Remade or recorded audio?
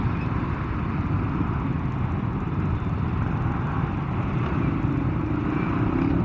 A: recorded